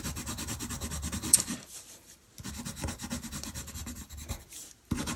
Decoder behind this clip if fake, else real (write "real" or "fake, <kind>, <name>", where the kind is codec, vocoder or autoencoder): real